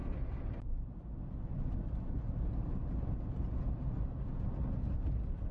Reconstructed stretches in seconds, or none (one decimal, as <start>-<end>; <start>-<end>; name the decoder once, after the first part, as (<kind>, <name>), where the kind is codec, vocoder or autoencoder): none